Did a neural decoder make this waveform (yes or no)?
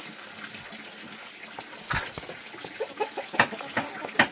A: no